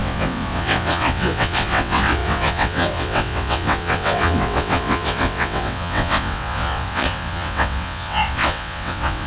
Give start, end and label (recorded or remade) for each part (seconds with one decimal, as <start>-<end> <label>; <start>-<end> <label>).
0.0-9.3 remade

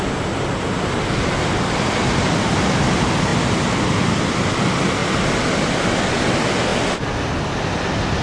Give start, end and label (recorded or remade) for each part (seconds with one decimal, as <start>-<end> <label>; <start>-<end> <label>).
0.0-8.2 recorded

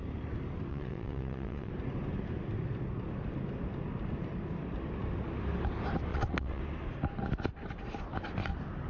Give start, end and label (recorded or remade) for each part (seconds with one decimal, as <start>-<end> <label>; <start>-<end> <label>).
0.0-0.7 recorded; 0.7-1.7 remade; 1.7-6.1 recorded; 6.1-6.6 remade; 6.6-8.9 recorded

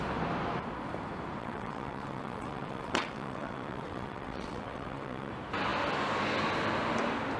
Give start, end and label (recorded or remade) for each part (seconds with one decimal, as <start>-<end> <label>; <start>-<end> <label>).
0.0-1.4 recorded; 1.4-5.3 remade; 5.3-7.4 recorded

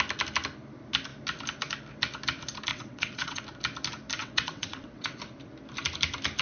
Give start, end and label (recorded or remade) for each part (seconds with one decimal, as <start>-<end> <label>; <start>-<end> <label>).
0.0-2.7 recorded; 2.7-3.4 remade; 3.4-4.2 recorded; 4.2-5.2 remade; 5.2-6.4 recorded